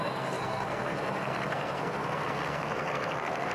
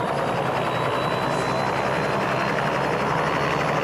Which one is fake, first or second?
first